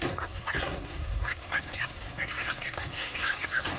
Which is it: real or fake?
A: fake